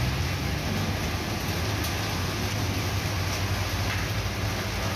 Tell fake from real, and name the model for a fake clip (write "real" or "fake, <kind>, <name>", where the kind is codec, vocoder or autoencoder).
real